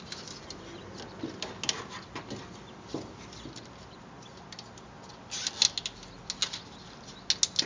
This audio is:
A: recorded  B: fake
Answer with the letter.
A